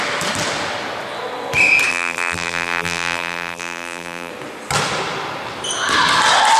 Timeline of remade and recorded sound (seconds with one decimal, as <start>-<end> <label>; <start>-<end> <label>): 0.0-1.9 recorded; 1.9-4.3 remade; 4.3-6.6 recorded

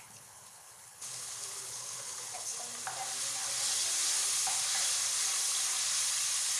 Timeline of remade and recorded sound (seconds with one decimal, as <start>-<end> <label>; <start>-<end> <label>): 0.0-2.5 remade; 2.5-6.6 recorded

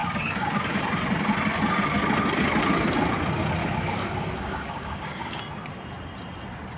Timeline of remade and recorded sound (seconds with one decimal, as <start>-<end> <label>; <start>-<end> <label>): 0.0-0.8 remade; 0.8-3.6 recorded; 3.6-5.4 remade; 5.4-6.8 recorded

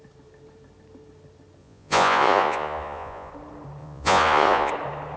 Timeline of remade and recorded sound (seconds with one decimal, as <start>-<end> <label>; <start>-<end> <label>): 0.0-1.6 recorded; 1.6-3.3 remade; 3.3-3.8 recorded; 3.8-4.7 remade; 4.7-5.2 recorded

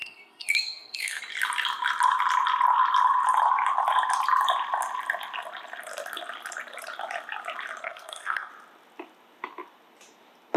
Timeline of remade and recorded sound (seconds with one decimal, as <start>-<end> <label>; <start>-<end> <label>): 0.0-1.2 remade; 1.2-7.8 recorded; 7.8-8.5 remade; 8.5-10.6 recorded